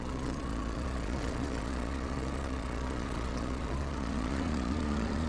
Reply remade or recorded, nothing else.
remade